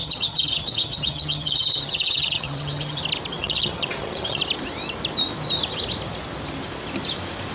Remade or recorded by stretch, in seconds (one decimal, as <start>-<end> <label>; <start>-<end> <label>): 0.0-3.0 remade; 3.0-3.4 recorded; 3.4-4.4 remade; 4.4-7.5 recorded